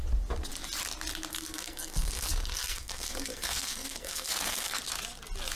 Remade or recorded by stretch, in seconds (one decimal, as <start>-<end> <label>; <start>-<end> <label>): 0.0-1.4 recorded; 1.4-4.8 remade; 4.8-5.6 recorded